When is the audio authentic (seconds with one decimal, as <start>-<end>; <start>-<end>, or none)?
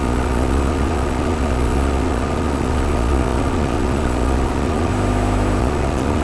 4.9-5.6